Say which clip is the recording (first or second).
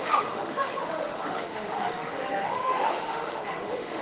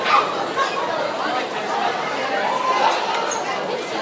second